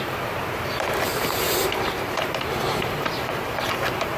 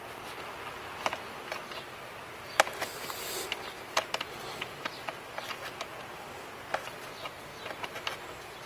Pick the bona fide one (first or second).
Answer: second